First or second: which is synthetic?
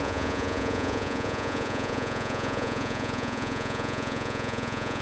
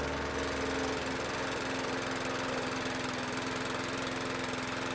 first